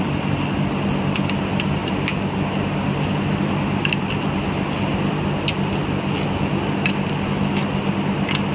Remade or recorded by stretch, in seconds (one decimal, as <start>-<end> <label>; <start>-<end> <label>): 0.0-8.5 recorded

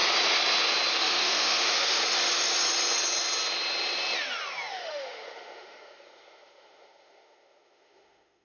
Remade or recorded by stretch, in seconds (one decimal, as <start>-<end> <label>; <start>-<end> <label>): 0.0-1.0 recorded; 1.0-2.0 remade; 2.0-4.7 recorded; 4.7-8.4 remade

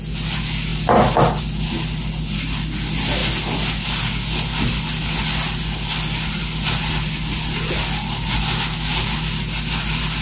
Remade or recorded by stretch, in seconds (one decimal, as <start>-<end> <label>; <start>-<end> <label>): 0.0-10.2 recorded

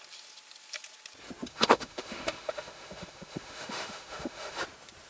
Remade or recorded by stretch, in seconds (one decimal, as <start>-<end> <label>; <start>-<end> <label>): 0.0-1.5 recorded; 1.5-4.6 remade; 4.6-5.1 recorded

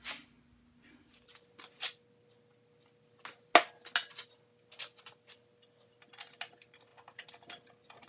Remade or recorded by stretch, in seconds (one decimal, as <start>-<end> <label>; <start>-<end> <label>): 0.0-8.1 recorded

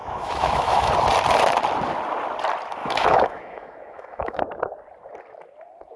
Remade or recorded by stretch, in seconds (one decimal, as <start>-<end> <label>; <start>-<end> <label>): 0.0-0.9 remade; 0.9-2.8 recorded; 2.8-4.4 remade; 4.4-6.0 recorded

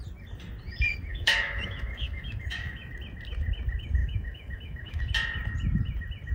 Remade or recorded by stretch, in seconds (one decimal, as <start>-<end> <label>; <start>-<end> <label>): 0.0-1.1 recorded; 1.1-2.9 remade; 2.9-4.0 recorded; 4.0-5.0 remade; 5.0-6.3 recorded

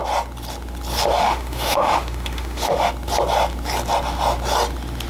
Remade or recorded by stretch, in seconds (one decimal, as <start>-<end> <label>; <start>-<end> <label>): 0.0-1.2 recorded; 1.2-2.9 remade; 2.9-5.1 recorded